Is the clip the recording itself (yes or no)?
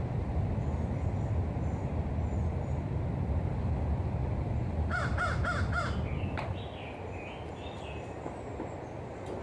yes